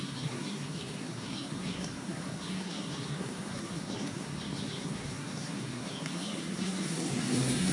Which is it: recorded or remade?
remade